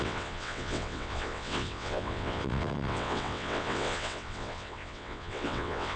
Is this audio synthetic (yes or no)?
yes